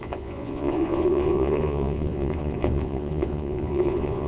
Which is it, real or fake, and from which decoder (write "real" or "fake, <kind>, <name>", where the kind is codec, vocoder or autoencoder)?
fake, vocoder, Vocos